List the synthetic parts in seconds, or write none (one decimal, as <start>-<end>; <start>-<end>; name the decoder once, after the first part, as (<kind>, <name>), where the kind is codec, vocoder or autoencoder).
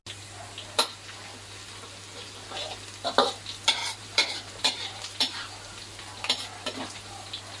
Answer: 3.8-5.5 (vocoder, BigVGAN v2)